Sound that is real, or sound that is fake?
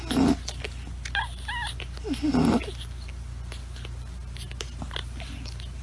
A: real